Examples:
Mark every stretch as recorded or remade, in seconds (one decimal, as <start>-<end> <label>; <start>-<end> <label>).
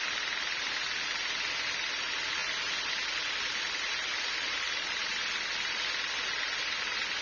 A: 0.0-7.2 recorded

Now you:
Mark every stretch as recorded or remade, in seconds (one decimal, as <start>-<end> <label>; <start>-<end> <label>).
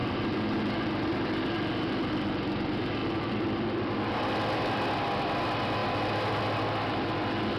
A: 0.0-1.1 remade; 1.1-3.0 recorded; 3.0-4.2 remade; 4.2-7.6 recorded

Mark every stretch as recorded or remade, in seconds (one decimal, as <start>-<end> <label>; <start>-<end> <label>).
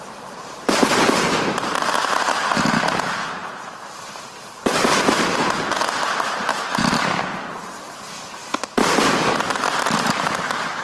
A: 0.0-8.4 remade; 8.4-9.0 recorded; 9.0-10.8 remade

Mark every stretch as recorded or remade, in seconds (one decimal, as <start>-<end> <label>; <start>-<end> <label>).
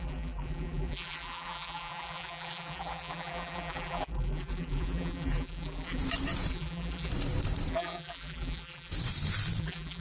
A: 0.0-6.0 remade; 6.0-6.5 recorded; 6.5-7.1 remade; 7.1-7.7 recorded; 7.7-8.9 remade; 8.9-9.6 recorded; 9.6-10.0 remade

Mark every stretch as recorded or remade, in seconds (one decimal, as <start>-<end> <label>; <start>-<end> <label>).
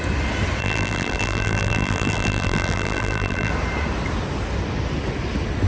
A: 0.0-0.6 recorded; 0.6-3.5 remade; 3.5-5.7 recorded